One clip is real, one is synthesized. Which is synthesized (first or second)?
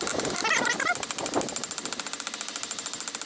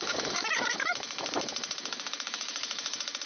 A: second